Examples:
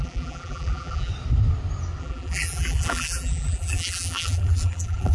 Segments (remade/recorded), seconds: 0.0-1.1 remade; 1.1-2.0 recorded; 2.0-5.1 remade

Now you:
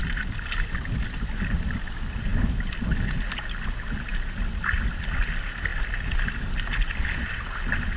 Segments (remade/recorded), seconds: 0.0-5.7 recorded; 5.7-6.3 remade; 6.3-8.0 recorded

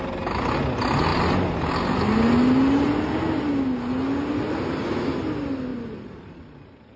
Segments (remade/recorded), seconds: 0.0-5.7 recorded; 5.7-7.0 remade

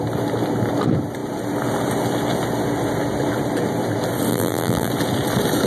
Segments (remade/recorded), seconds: 0.0-4.3 recorded; 4.3-4.9 remade; 4.9-5.7 recorded

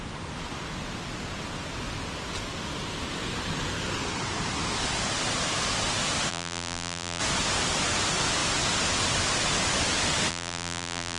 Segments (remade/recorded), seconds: 0.0-6.3 recorded; 6.3-7.2 remade; 7.2-10.3 recorded; 10.3-11.2 remade

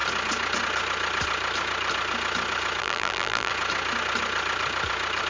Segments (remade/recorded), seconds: 0.0-2.8 recorded; 2.8-3.5 remade; 3.5-5.3 recorded

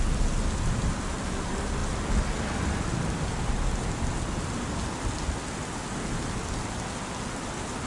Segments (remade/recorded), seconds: 0.0-7.9 recorded

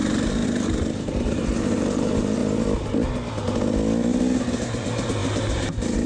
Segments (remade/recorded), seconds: 0.0-2.4 remade; 2.4-4.5 recorded; 4.5-6.1 remade